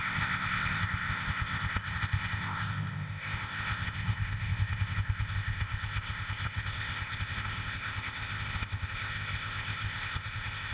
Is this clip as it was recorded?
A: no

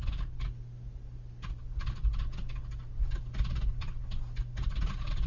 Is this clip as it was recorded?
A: yes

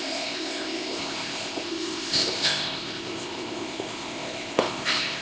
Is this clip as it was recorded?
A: no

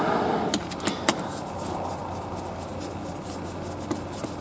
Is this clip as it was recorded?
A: yes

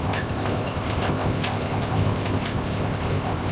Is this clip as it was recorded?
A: no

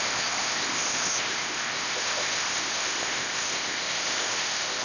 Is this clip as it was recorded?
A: no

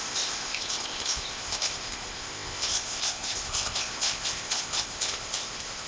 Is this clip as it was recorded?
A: no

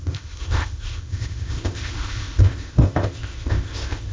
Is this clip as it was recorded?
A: no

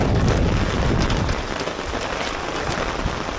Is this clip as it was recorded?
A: yes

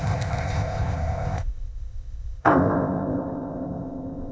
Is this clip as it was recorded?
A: no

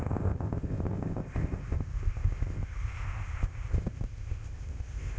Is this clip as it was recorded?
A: no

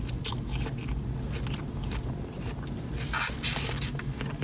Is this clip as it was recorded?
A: yes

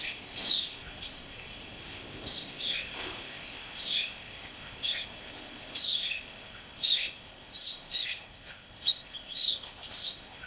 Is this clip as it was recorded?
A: no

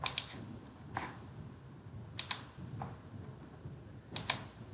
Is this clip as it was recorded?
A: yes